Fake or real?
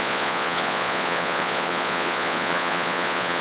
fake